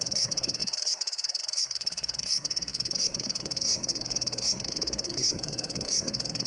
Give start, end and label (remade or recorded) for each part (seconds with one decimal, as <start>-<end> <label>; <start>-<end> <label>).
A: 0.0-6.5 remade